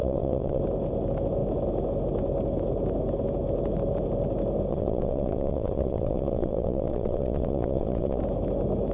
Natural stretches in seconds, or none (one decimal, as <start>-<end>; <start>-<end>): 0.6-4.7; 8.2-8.9